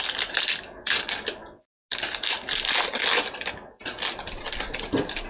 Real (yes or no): yes